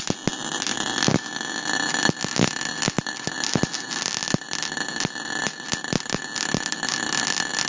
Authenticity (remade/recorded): recorded